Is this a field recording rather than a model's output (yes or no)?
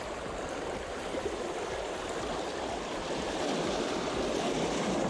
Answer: no